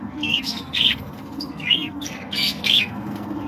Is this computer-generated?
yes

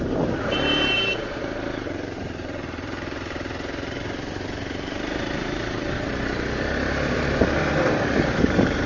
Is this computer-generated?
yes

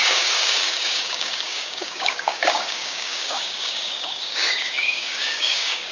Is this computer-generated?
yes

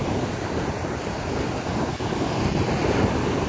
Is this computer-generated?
no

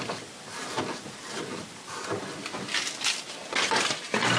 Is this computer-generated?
no